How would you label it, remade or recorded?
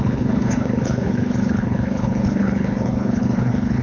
remade